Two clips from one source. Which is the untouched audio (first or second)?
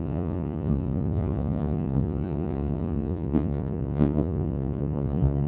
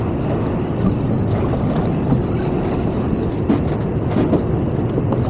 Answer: second